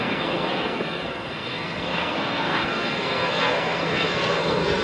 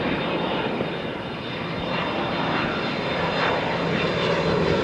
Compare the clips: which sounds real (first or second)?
second